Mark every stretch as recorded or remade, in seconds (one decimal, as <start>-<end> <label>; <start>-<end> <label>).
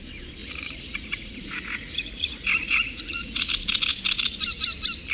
0.0-0.4 recorded; 0.4-3.5 remade; 3.5-5.1 recorded